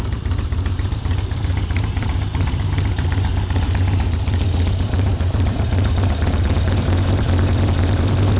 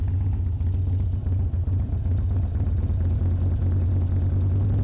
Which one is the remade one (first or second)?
first